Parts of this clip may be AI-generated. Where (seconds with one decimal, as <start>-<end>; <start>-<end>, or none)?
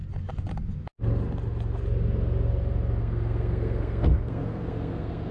3.0-5.3